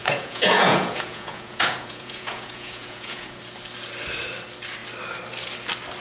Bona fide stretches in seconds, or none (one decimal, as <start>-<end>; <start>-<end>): 3.4-6.0